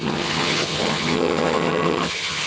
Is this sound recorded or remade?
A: remade